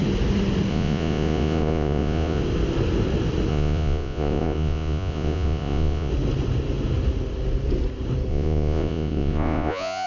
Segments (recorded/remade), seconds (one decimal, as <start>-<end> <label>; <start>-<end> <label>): 0.0-0.7 recorded; 0.7-2.4 remade; 2.4-3.5 recorded; 3.5-6.1 remade; 6.1-8.3 recorded; 8.3-10.1 remade